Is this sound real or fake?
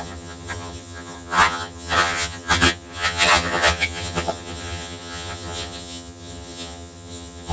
fake